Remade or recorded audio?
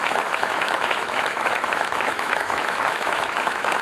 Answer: remade